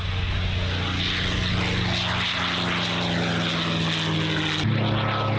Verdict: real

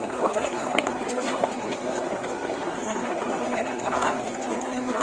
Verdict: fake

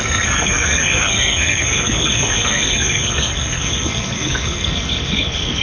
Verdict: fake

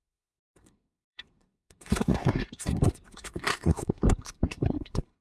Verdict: fake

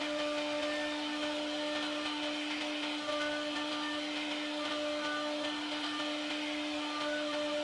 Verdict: real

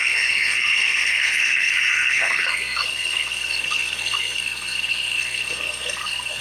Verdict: fake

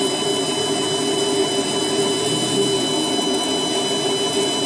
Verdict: real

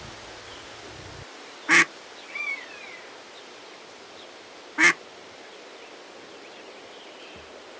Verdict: real